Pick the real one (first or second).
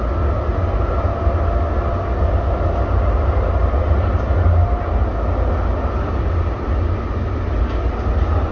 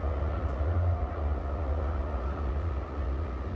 first